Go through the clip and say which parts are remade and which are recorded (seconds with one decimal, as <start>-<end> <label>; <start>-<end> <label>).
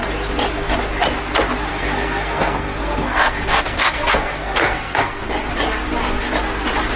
0.0-1.7 recorded; 1.7-5.2 remade; 5.2-7.0 recorded